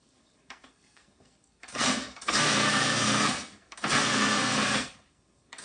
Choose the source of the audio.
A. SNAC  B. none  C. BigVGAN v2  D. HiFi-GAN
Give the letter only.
A